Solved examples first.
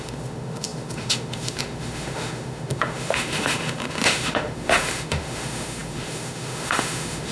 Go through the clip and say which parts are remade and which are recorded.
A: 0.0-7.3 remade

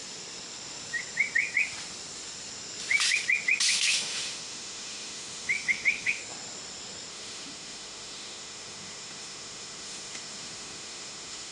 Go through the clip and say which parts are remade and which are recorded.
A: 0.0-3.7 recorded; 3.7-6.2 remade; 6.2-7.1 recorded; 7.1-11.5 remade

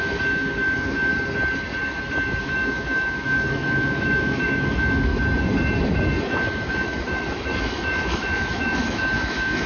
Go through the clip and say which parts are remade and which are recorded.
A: 0.0-1.1 remade; 1.1-2.4 recorded; 2.4-5.1 remade; 5.1-6.2 recorded; 6.2-9.7 remade